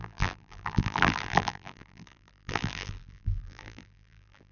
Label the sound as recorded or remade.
remade